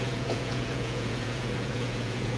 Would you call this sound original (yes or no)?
no